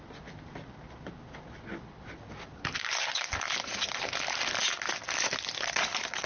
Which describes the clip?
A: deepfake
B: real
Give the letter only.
B